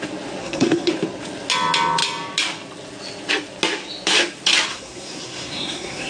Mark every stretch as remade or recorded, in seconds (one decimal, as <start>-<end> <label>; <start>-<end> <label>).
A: 0.0-0.4 recorded; 0.4-0.9 remade; 0.9-4.7 recorded; 4.7-6.1 remade